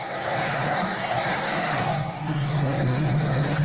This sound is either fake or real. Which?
fake